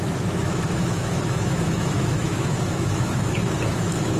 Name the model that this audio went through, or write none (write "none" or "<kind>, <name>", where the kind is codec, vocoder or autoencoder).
autoencoder, DAC-VAE